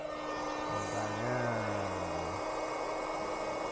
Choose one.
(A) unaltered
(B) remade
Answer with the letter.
A